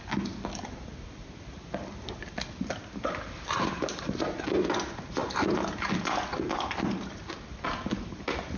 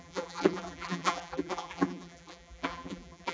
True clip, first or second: first